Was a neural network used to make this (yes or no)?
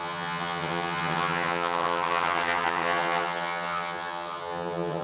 yes